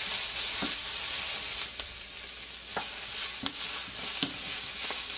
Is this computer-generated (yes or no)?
no